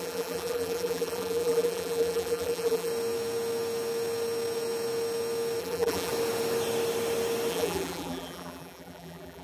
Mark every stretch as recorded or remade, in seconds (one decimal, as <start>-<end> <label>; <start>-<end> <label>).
0.0-2.9 remade; 2.9-5.6 recorded; 5.6-6.1 remade; 6.1-7.5 recorded; 7.5-9.4 remade